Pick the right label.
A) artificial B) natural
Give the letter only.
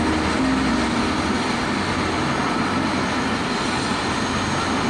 B